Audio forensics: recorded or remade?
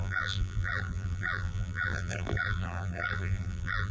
remade